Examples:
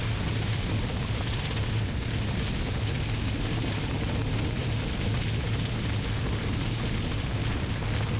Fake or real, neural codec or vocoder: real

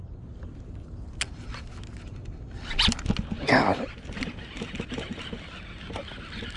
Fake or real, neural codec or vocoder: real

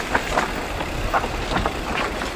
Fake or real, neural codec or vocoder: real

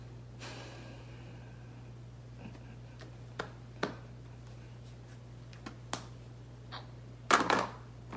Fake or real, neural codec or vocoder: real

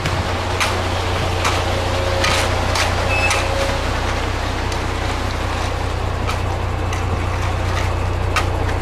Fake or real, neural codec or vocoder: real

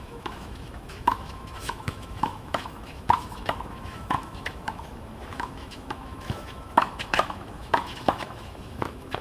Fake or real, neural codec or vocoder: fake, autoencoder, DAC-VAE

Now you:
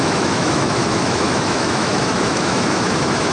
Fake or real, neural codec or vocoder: fake, autoencoder, DAC-VAE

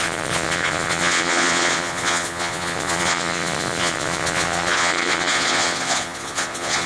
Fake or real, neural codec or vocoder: fake, vocoder, Vocos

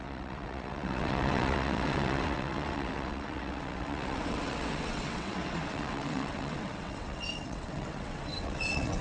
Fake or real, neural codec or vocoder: fake, vocoder, WaveNeXt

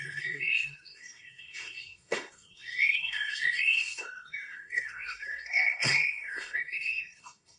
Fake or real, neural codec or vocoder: fake, codec, SNAC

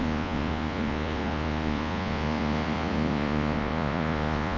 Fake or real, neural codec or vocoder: fake, vocoder, Vocos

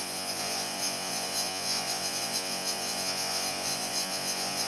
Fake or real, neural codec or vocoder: fake, vocoder, Vocos